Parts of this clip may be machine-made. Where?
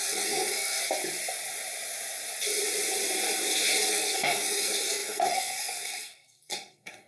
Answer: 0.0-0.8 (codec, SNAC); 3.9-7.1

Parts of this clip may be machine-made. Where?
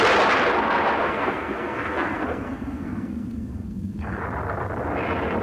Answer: 1.0-4.2 (codec, SNAC)